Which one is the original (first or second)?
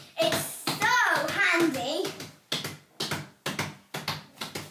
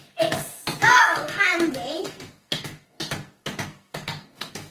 first